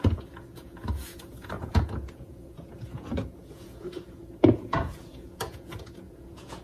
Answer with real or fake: fake